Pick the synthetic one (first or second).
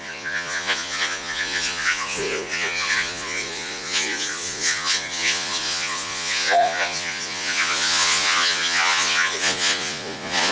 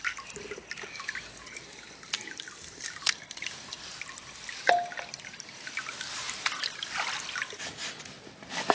first